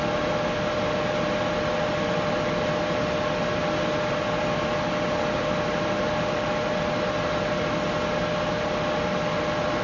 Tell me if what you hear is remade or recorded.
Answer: recorded